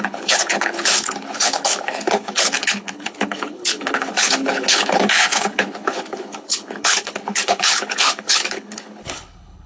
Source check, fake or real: fake